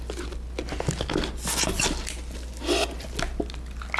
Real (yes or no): yes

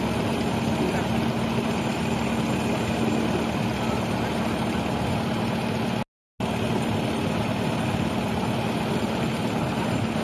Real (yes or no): yes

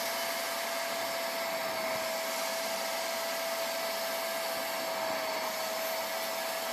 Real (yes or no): yes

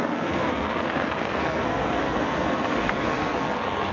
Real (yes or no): no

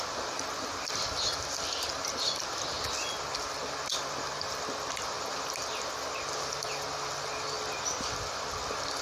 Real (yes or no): yes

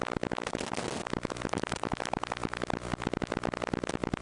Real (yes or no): yes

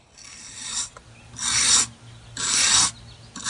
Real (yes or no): yes